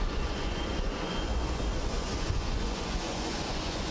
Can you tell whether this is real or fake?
fake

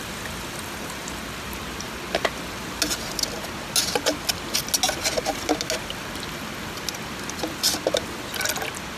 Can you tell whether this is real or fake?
real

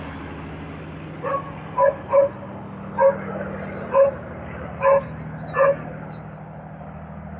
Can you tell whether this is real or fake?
real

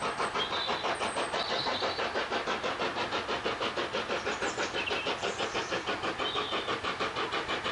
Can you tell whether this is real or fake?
real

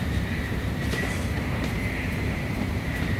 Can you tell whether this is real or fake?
fake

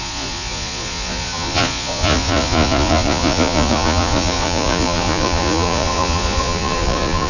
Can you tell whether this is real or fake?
fake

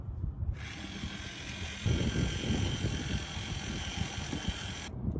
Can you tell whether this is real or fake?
real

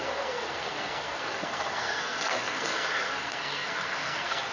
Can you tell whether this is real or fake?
fake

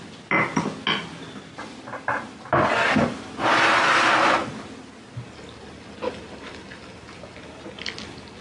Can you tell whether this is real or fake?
real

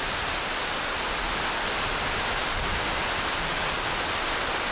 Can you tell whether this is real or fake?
real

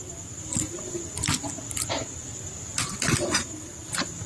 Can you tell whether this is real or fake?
real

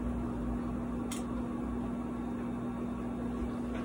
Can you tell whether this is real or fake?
real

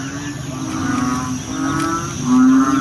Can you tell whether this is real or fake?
real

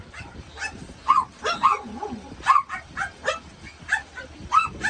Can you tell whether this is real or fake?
real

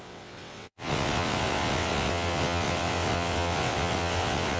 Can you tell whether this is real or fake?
fake